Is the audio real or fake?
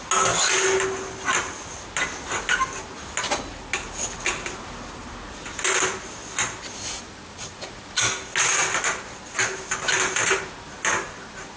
real